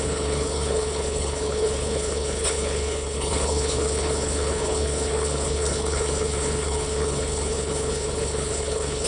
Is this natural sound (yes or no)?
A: no